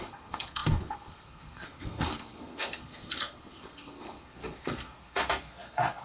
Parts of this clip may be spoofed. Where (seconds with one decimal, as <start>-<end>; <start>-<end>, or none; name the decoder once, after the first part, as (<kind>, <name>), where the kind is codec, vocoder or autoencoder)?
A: 0.0-6.0 (codec, SNAC)